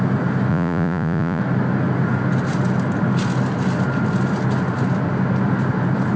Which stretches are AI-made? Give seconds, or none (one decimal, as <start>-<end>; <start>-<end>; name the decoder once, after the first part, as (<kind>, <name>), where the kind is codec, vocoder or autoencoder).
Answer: 0.5-1.4 (vocoder, Vocos)